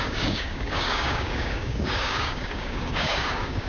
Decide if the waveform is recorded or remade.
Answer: remade